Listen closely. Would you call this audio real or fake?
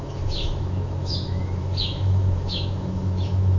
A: fake